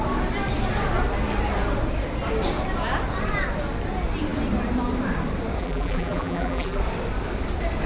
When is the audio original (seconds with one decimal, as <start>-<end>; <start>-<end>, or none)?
0.0-5.6; 6.8-7.9